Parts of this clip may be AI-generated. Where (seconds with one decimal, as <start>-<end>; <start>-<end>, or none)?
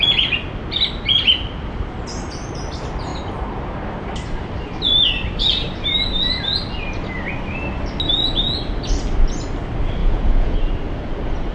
10.0-10.7